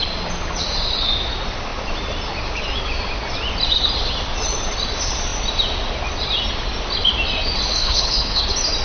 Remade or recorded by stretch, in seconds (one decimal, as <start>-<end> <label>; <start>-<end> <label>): 0.0-7.8 recorded; 7.8-8.4 remade; 8.4-8.8 recorded